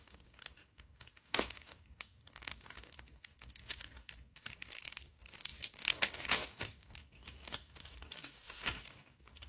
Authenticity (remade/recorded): remade